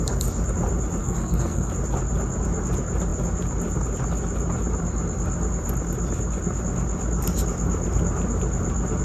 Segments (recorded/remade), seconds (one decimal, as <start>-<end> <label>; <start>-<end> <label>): 0.0-1.0 recorded; 1.0-1.7 remade; 1.7-9.0 recorded